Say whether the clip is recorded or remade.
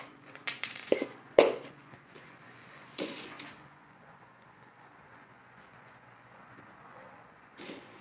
remade